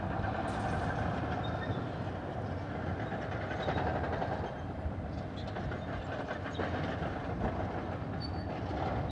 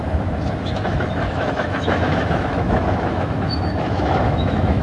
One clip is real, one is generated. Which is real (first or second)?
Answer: first